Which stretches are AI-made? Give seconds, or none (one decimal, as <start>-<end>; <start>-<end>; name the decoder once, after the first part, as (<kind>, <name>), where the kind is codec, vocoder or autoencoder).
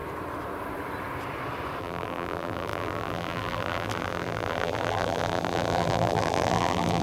1.8-7.0 (vocoder, BigVGAN v2)